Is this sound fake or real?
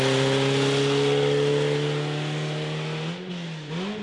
real